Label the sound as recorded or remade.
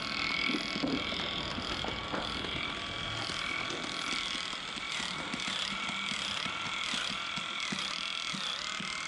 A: recorded